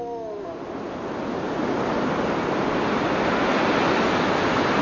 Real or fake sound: real